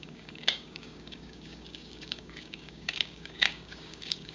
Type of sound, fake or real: fake